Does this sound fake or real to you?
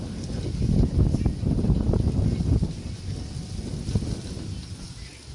real